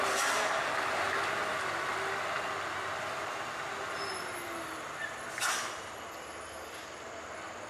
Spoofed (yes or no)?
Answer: no